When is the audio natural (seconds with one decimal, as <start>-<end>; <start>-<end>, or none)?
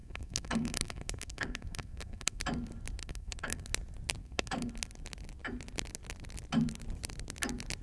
2.4-3.0; 3.7-4.2; 4.7-7.8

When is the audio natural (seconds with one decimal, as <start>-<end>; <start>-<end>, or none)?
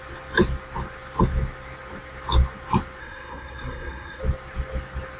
0.0-3.0; 4.2-5.2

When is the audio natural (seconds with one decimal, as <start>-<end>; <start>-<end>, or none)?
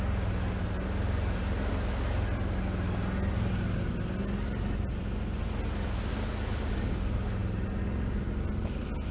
0.0-9.1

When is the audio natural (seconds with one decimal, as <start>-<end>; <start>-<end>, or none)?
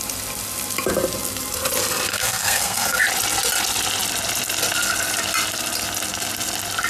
0.0-2.1; 3.0-6.9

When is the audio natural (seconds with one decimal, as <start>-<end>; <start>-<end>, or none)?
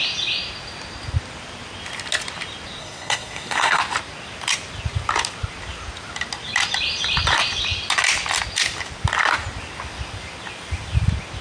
0.0-2.8; 3.8-11.4